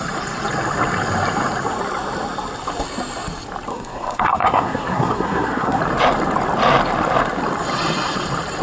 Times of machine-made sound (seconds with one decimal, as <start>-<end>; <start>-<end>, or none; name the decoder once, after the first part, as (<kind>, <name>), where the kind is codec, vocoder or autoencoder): 3.7-5.8 (codec, SNAC)